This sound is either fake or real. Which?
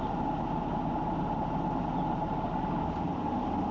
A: real